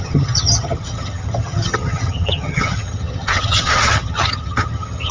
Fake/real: fake